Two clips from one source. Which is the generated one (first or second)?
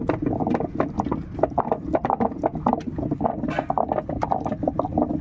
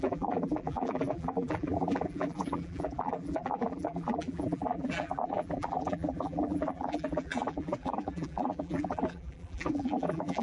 second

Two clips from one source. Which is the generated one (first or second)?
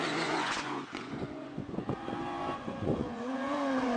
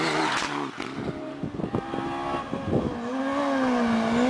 first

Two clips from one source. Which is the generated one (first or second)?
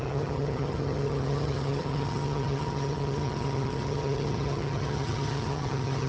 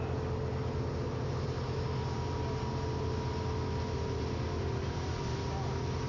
first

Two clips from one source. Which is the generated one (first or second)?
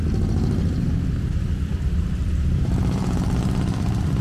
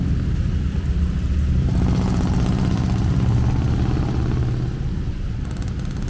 first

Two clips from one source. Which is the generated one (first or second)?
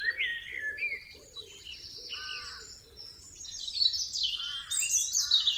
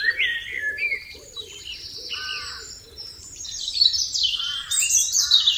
second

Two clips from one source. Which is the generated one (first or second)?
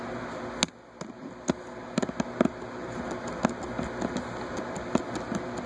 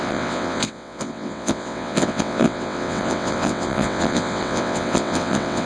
second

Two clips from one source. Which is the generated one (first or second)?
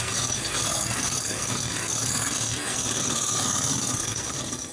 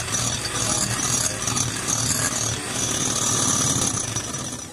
first